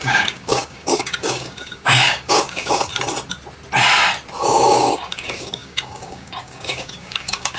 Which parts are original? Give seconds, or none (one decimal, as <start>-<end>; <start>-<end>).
2.9-4.4